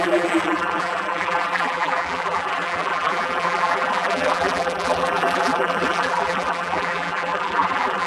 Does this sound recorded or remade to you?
remade